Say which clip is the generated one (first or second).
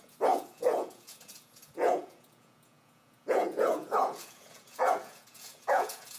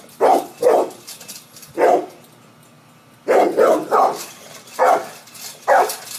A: first